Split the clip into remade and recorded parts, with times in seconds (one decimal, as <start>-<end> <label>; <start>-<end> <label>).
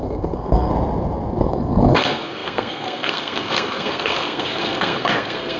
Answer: 0.0-0.7 remade; 0.7-1.4 recorded; 1.4-5.6 remade